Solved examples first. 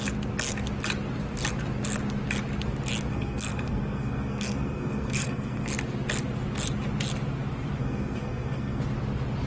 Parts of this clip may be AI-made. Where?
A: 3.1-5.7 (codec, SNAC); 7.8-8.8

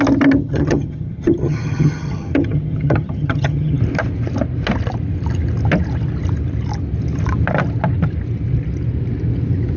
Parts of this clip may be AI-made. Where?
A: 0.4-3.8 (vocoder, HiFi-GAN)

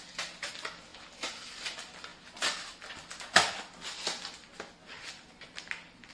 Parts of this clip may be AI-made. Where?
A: none